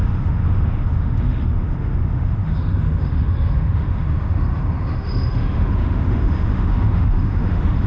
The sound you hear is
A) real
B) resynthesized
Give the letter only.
B